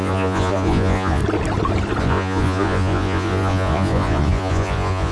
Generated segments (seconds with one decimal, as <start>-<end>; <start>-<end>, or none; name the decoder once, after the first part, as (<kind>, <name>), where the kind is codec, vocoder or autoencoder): 0.0-1.2 (vocoder, Vocos); 2.0-5.1